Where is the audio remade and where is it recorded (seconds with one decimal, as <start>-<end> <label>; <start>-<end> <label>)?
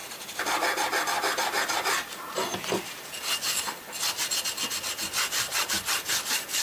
0.0-6.6 recorded